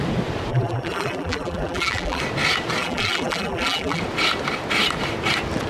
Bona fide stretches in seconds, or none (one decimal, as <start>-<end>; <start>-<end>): 0.0-0.5; 2.2-2.8; 4.0-5.7